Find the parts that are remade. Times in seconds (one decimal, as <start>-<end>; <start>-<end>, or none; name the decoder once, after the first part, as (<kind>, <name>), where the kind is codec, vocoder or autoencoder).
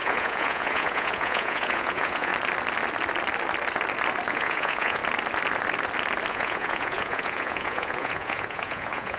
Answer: 0.0-2.3 (vocoder, Vocos); 4.3-5.0; 6.3-9.2